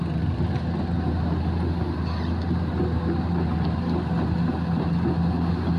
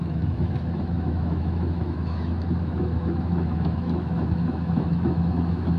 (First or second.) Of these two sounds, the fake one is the second